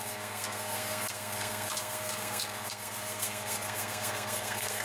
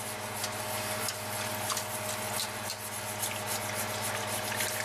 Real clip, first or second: second